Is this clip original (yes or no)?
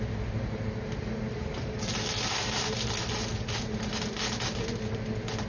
yes